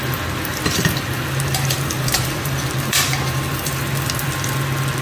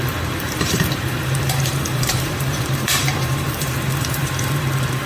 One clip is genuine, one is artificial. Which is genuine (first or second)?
first